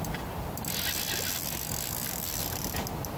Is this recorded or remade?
recorded